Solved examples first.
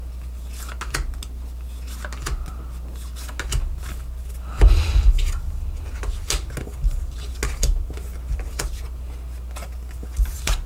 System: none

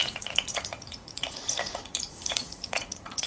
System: vocoder, Vocos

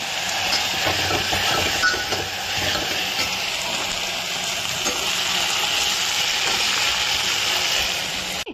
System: none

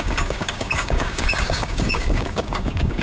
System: codec, DAC